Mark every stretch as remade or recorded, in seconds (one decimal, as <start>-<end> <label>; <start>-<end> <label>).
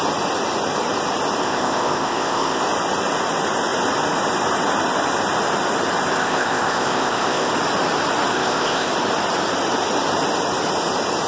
0.0-1.4 recorded; 1.4-2.6 remade; 2.6-6.2 recorded; 6.2-7.5 remade; 7.5-8.3 recorded; 8.3-8.9 remade; 8.9-11.3 recorded